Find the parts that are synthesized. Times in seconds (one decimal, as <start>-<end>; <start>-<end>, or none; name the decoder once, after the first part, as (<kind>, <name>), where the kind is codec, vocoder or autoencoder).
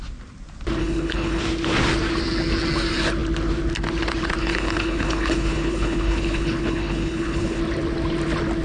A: 0.8-1.4 (codec, HILCodec); 4.4-7.6